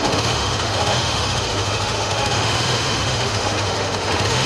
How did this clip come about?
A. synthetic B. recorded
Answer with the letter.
A